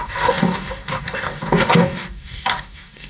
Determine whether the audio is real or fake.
fake